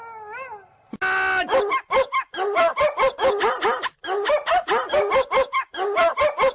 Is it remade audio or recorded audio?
recorded